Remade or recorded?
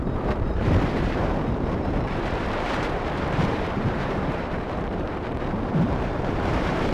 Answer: remade